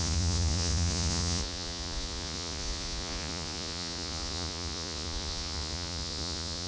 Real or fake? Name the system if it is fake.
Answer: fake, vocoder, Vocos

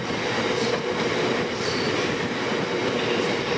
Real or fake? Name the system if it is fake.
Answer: real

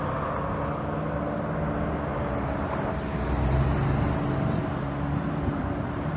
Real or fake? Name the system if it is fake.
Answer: real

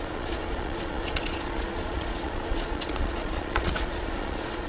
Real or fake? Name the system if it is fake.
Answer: fake, vocoder, Vocos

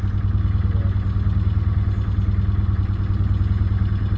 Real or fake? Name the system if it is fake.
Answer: real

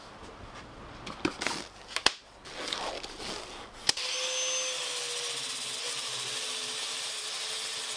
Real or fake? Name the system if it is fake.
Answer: real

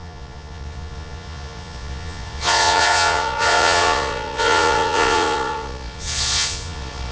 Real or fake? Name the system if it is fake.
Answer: fake, vocoder, Vocos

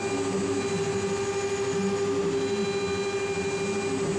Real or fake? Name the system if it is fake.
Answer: real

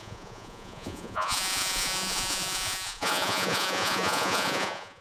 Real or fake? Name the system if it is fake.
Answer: fake, vocoder, Vocos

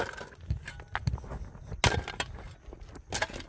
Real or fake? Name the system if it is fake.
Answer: real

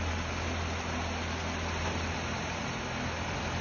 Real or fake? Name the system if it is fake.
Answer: real